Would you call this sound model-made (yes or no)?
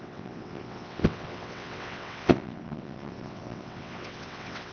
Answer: yes